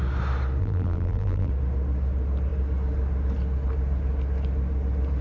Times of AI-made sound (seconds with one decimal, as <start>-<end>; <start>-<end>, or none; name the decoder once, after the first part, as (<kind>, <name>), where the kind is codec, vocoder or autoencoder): 0.6-1.5 (vocoder, BigVGAN v2)